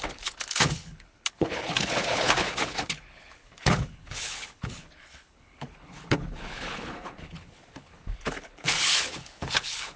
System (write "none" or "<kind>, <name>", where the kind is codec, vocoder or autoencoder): codec, HILCodec